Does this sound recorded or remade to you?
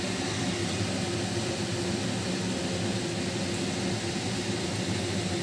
recorded